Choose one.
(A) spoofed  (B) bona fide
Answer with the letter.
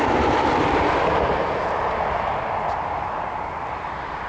B